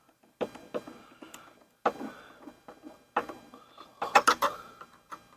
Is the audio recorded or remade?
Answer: recorded